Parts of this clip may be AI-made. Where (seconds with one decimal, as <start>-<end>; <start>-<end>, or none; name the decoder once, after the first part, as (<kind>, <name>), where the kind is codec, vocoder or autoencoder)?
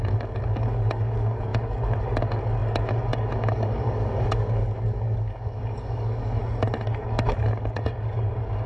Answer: 0.0-6.4 (codec, DAC); 7.0-8.7